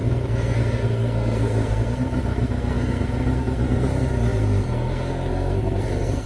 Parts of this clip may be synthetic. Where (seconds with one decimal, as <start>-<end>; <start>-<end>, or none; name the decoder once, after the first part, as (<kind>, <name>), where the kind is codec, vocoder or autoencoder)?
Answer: 0.0-6.3 (codec, SNAC)